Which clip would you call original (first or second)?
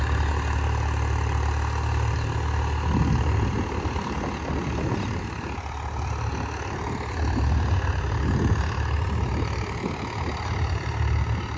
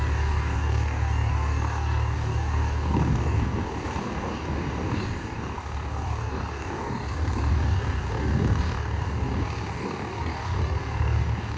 first